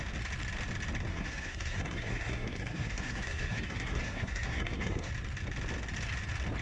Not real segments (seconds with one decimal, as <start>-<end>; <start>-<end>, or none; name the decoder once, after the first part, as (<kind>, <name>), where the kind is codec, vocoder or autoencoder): 1.1-5.1 (codec, SNAC)